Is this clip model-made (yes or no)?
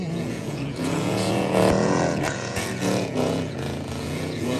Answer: yes